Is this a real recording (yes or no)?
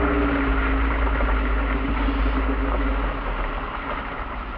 yes